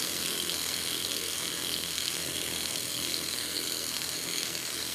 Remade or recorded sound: remade